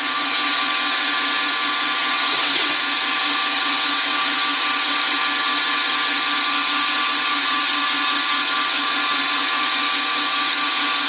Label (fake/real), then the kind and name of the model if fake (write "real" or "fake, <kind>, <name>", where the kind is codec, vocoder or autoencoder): fake, vocoder, WaveNeXt